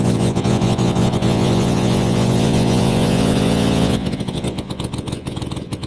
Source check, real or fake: fake